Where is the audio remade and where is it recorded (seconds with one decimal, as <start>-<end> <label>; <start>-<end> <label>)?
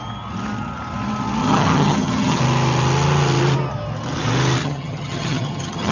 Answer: 0.0-1.4 recorded; 1.4-2.4 remade; 2.4-4.6 recorded; 4.6-5.9 remade